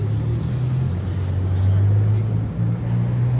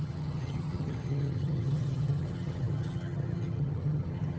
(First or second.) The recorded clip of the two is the first